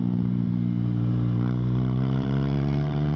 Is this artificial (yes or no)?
yes